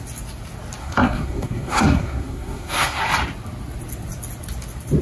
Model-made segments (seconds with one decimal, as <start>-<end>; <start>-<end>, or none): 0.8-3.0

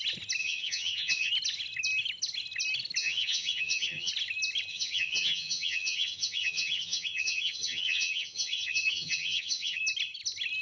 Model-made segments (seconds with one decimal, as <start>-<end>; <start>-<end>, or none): 0.4-1.3; 3.0-4.1; 4.7-9.8

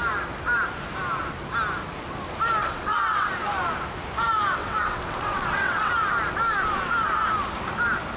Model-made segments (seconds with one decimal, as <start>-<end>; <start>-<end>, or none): 2.6-3.3; 4.6-5.9